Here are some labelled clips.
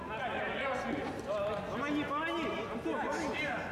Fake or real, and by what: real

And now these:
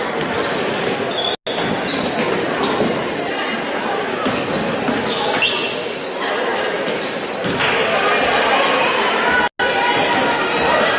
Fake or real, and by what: real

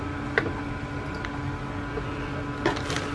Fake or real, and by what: real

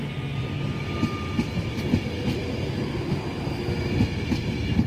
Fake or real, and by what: real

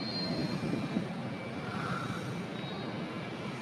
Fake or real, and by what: real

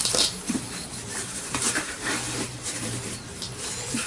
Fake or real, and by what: fake, vocoder, BigVGAN v2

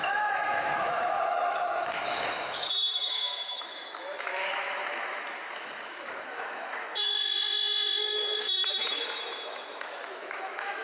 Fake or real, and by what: fake, autoencoder, DAC-VAE